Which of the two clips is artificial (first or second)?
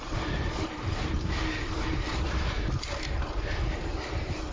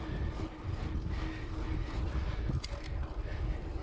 first